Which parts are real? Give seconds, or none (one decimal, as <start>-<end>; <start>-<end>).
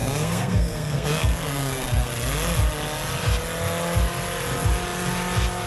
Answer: 2.1-5.7